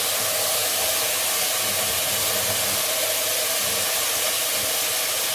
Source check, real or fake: real